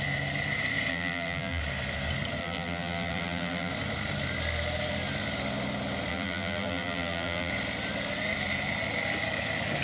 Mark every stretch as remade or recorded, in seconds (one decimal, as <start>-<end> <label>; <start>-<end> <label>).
0.0-0.9 recorded; 0.9-1.6 remade; 1.6-2.4 recorded; 2.4-3.7 remade; 3.7-6.1 recorded; 6.1-7.5 remade; 7.5-9.8 recorded